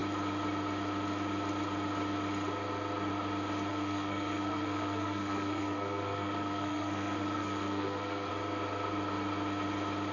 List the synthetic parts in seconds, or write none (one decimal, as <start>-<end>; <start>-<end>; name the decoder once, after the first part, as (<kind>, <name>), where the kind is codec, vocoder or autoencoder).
3.7-8.3 (codec, SNAC)